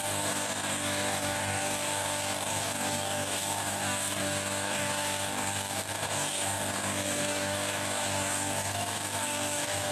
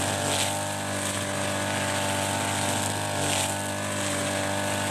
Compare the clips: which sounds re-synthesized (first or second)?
first